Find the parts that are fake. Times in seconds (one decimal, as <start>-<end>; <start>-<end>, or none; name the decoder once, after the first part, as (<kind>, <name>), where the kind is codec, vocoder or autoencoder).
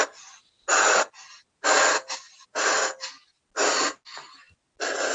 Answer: none